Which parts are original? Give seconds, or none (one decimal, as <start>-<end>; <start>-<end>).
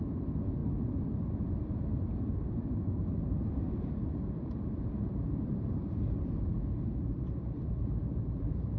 0.6-1.4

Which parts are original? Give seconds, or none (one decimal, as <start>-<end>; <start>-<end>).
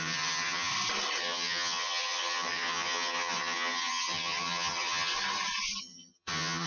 0.7-1.2; 5.1-5.8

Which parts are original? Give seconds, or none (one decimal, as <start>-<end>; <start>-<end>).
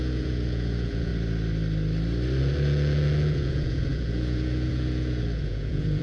1.1-2.4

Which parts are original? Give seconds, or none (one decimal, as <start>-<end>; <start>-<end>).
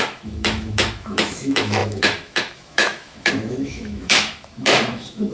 none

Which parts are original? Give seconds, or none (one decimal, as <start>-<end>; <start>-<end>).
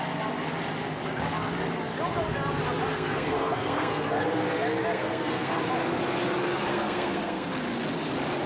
0.0-2.9; 4.2-4.9; 5.6-6.7; 7.5-8.5